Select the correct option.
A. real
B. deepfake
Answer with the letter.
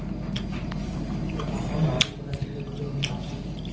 A